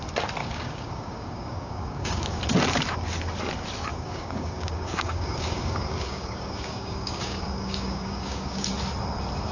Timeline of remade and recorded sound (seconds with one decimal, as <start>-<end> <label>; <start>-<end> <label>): 0.0-0.4 recorded; 0.4-2.4 remade; 2.4-3.9 recorded; 3.9-8.7 remade; 8.7-9.5 recorded